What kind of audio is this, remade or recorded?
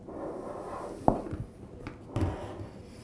recorded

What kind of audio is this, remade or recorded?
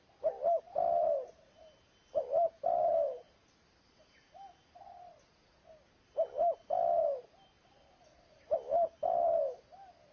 recorded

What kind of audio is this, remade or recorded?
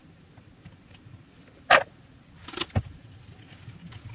recorded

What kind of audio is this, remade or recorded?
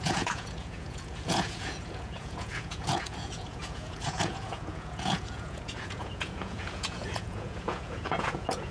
remade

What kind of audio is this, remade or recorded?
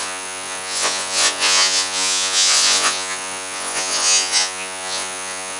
remade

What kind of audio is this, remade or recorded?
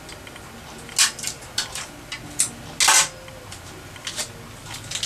recorded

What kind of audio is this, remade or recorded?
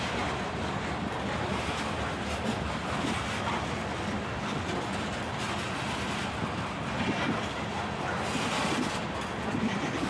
recorded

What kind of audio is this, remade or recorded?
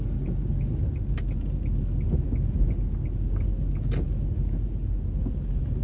recorded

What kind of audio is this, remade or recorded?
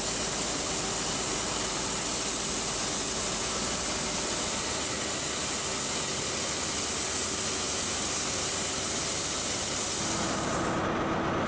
recorded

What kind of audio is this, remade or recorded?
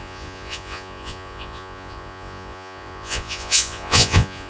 remade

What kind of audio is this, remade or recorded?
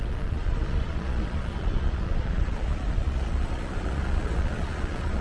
remade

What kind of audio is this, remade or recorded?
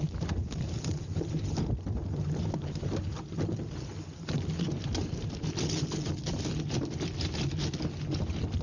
recorded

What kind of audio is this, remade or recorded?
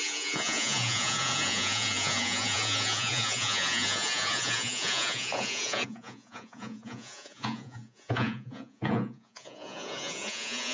remade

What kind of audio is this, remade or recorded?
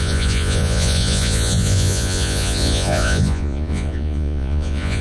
remade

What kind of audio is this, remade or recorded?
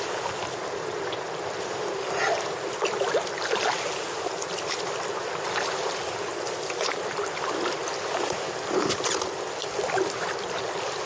recorded